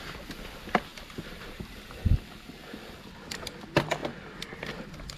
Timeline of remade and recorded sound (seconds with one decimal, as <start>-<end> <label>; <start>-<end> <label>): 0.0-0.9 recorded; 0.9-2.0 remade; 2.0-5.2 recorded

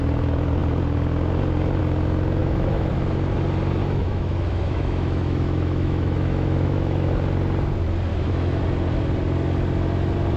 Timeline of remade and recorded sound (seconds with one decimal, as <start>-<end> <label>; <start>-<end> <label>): 0.0-2.4 recorded; 2.4-2.9 remade; 2.9-3.8 recorded; 3.8-7.1 remade; 7.1-8.1 recorded; 8.1-8.6 remade; 8.6-10.4 recorded

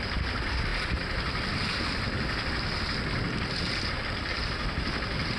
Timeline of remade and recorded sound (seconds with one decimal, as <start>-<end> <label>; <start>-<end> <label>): 0.0-5.4 recorded